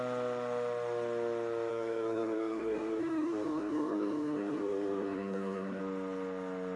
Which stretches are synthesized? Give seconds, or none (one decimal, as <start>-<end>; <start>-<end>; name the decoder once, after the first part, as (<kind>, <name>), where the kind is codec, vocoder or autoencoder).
1.7-5.8 (codec, SNAC)